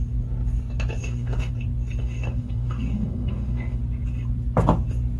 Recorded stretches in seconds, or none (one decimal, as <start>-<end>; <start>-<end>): 0.0-1.0; 1.5-2.0; 3.8-5.2